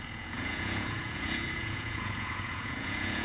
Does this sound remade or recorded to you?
remade